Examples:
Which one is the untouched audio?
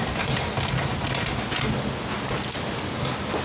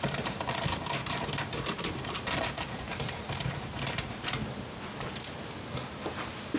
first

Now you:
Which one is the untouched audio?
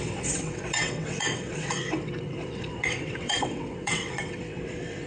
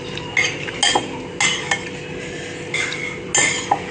second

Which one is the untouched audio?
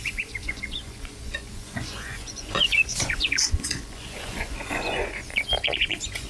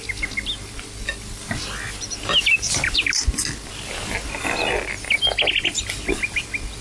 second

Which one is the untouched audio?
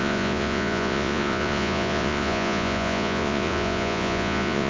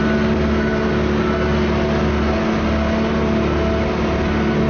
second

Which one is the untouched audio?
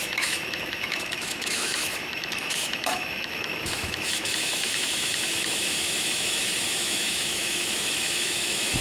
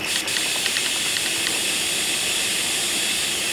second